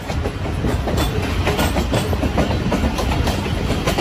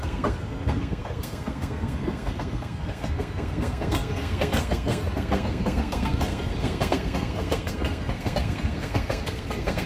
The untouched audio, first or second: first